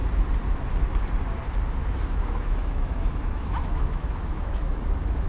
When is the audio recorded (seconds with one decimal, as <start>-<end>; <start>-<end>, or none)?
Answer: 0.0-1.8